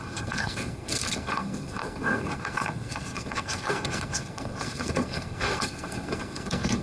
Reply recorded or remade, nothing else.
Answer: remade